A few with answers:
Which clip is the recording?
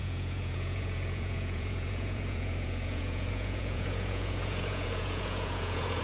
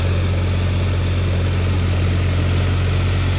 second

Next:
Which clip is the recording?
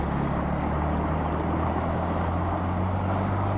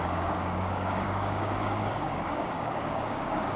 first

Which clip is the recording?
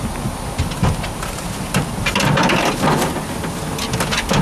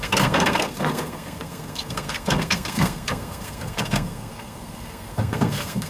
first